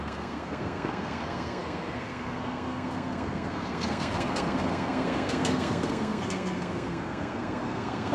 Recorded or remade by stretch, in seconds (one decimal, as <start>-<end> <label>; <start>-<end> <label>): 0.0-8.1 remade

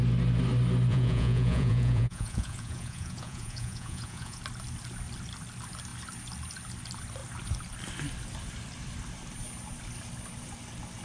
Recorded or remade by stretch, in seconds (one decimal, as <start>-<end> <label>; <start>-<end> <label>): 0.0-0.9 recorded; 0.9-4.4 remade; 4.4-11.0 recorded